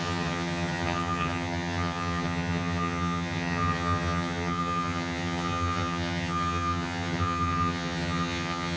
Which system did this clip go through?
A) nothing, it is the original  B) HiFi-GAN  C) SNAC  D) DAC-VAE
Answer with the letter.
B